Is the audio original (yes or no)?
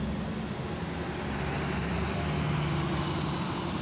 yes